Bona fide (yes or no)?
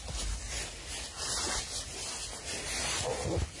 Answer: yes